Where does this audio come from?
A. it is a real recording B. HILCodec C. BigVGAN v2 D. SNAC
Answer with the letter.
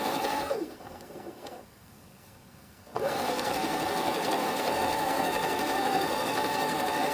D